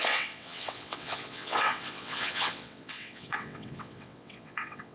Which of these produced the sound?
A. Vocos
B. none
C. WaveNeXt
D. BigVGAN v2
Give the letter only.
C